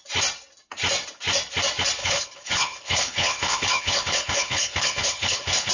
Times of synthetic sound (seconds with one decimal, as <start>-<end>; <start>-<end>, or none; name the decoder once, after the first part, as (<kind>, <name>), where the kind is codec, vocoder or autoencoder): 2.0-5.7 (codec, HILCodec)